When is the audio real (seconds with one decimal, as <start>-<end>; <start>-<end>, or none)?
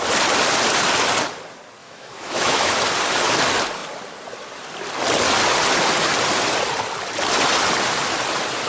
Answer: 0.0-1.8; 2.7-8.7